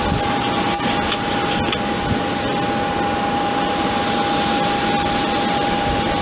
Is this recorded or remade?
recorded